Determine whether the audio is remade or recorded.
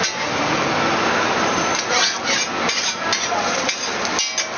recorded